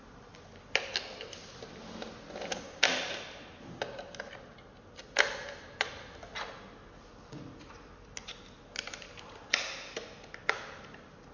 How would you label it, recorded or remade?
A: recorded